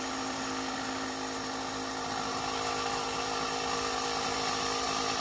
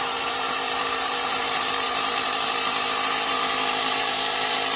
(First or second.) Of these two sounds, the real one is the first